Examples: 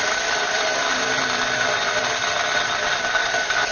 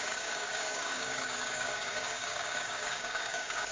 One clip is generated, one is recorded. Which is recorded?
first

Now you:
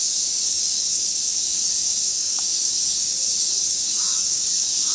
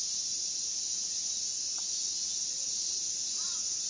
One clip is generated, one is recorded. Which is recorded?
second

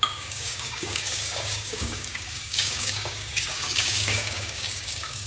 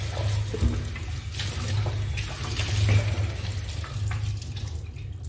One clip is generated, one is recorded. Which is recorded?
second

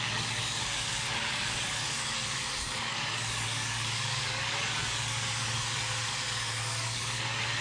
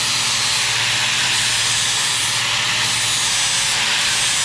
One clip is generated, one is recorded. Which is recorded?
second